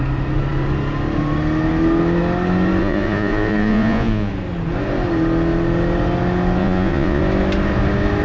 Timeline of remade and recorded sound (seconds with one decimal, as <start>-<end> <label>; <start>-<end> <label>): 0.0-2.8 recorded; 2.8-4.3 remade; 4.3-6.6 recorded; 6.6-7.2 remade; 7.2-8.2 recorded